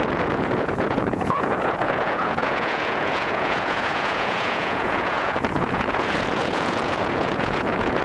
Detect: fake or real fake